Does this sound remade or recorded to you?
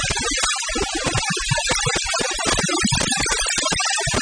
recorded